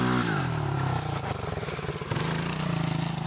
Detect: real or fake fake